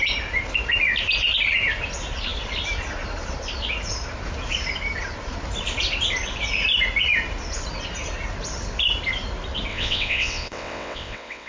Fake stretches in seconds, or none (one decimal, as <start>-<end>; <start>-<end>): 9.7-11.5

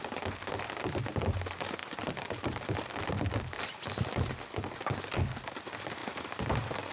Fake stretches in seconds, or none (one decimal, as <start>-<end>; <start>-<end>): none

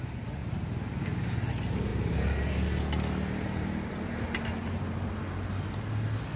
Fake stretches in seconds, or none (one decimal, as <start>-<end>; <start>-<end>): none

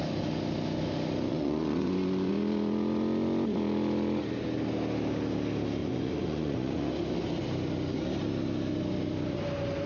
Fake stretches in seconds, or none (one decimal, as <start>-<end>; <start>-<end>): 1.3-2.3; 5.8-6.9

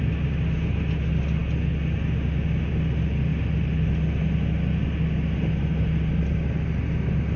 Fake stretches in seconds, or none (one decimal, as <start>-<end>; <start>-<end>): none

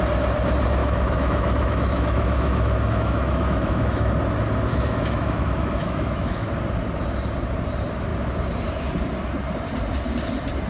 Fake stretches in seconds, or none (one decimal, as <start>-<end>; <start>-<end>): 0.8-4.1; 4.7-6.5

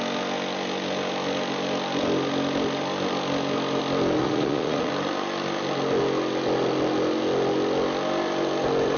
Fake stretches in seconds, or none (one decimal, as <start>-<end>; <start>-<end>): 4.2-4.9